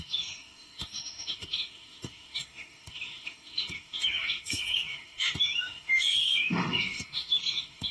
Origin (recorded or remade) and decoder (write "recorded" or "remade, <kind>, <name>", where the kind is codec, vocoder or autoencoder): remade, autoencoder, DAC-VAE